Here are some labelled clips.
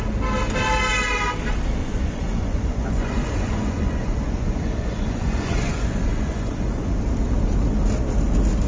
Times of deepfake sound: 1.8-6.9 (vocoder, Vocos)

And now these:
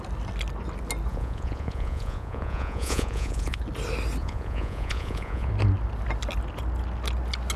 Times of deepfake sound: 1.1-3.6 (vocoder, Vocos); 4.2-5.5

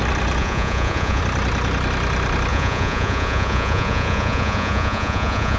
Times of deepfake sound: 0.4-1.2 (vocoder, Vocos); 2.5-5.6

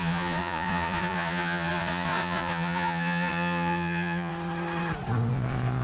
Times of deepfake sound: 0.0-4.3 (vocoder, Vocos); 5.3-5.8

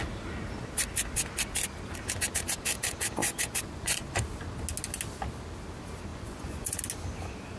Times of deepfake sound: 3.2-4.2 (vocoder, Vocos); 6.1-6.8

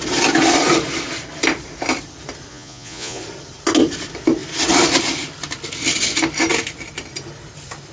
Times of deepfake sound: 2.5-3.2 (vocoder, Vocos)

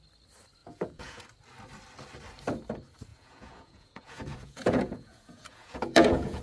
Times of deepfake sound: 0.6-1.2 (vocoder, Vocos); 3.1-6.4